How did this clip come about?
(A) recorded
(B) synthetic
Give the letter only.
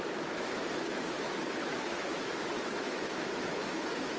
B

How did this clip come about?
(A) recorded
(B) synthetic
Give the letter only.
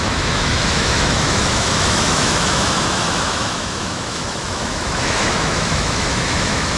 B